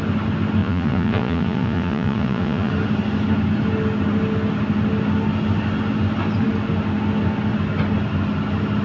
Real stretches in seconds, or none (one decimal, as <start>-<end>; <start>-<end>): 0.0-0.6; 2.7-8.8